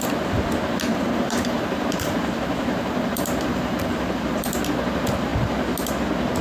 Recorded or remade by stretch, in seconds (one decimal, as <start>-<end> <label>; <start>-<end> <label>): 0.0-0.9 recorded; 0.9-4.6 remade; 4.6-6.4 recorded